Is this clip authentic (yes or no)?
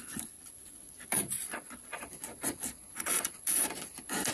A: no